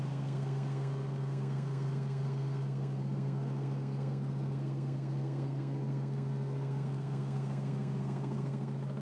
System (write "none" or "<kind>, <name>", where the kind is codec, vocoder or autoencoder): codec, SNAC